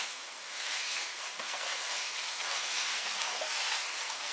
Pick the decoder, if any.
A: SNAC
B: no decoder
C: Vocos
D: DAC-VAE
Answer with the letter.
A